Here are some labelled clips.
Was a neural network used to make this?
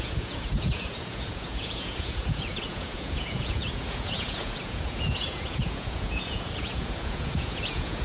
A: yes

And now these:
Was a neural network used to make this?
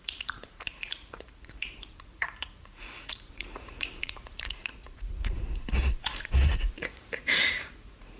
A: yes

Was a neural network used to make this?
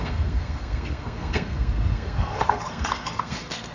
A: yes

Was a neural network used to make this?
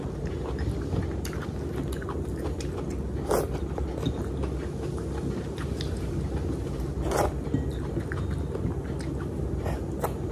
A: no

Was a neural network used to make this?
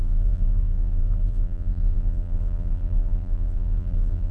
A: yes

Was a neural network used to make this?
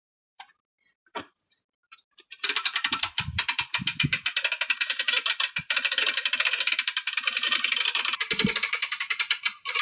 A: yes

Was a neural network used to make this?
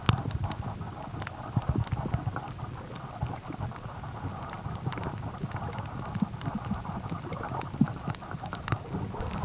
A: no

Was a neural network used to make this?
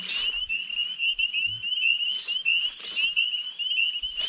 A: no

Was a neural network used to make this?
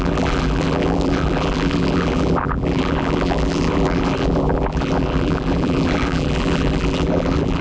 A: yes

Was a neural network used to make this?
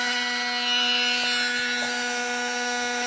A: no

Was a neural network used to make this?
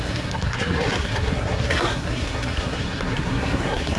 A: yes